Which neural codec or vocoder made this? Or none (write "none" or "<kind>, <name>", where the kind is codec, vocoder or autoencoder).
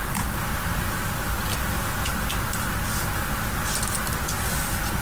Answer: none